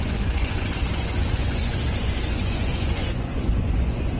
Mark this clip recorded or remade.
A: remade